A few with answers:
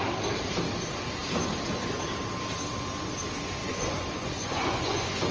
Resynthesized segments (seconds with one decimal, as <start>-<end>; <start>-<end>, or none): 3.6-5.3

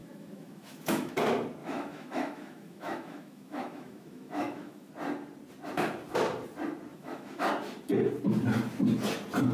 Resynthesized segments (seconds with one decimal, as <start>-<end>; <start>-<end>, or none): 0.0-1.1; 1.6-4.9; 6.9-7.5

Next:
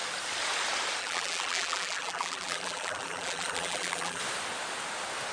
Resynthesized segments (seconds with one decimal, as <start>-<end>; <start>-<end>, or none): 1.0-4.2